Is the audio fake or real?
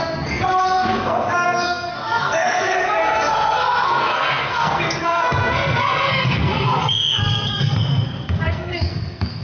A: fake